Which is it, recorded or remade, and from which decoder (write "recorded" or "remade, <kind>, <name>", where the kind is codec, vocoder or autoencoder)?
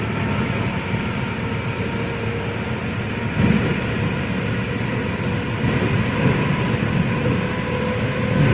recorded